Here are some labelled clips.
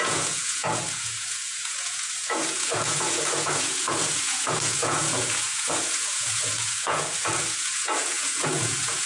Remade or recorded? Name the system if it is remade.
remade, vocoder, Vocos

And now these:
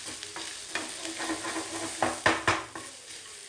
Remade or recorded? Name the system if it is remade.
recorded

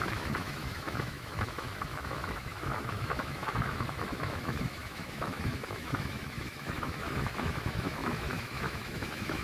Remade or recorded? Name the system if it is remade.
remade, autoencoder, DAC-VAE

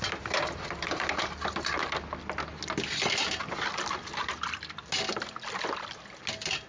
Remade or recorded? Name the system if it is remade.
recorded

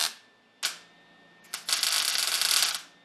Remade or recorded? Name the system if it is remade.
recorded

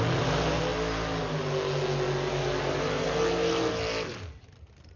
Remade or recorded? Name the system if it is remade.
recorded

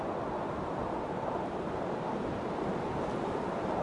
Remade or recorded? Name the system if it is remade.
recorded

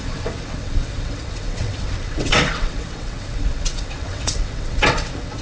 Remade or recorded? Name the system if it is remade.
remade, vocoder, WaveNeXt